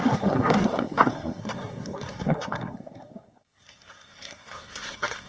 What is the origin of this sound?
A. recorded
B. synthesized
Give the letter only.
B